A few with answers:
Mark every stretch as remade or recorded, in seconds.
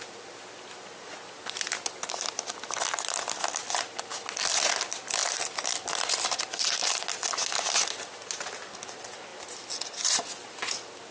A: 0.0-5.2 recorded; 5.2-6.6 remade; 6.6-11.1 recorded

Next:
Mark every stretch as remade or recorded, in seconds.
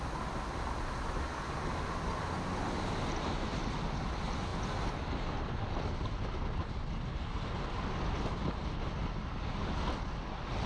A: 0.0-10.7 recorded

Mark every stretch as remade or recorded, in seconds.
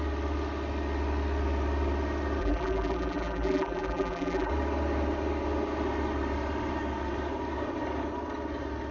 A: 0.0-2.4 recorded; 2.4-4.5 remade; 4.5-8.9 recorded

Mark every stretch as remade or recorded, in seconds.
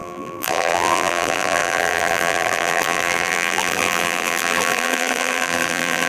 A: 0.0-6.1 remade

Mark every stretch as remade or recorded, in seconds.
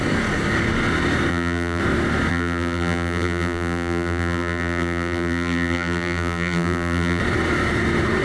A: 0.0-1.3 recorded; 1.3-1.8 remade; 1.8-2.3 recorded; 2.3-7.2 remade; 7.2-8.2 recorded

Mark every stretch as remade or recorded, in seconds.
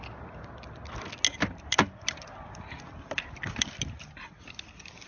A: 0.0-1.3 recorded; 1.3-4.3 remade; 4.3-5.1 recorded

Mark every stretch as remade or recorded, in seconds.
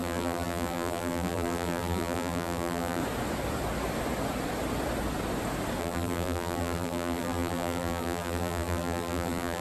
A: 0.0-3.0 remade; 3.0-5.8 recorded; 5.8-9.6 remade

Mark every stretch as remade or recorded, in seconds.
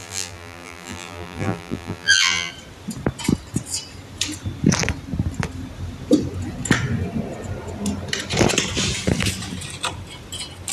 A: 0.0-2.5 remade; 2.5-10.7 recorded